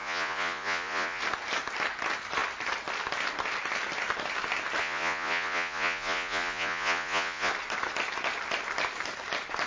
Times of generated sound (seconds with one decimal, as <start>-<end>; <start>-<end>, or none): 0.0-1.2; 4.8-7.5